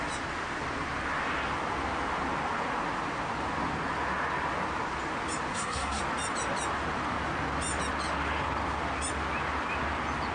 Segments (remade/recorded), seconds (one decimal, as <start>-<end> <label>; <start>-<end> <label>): 0.0-5.5 recorded; 5.5-6.0 remade; 6.0-10.3 recorded